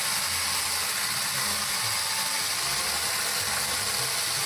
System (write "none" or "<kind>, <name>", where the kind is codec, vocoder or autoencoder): none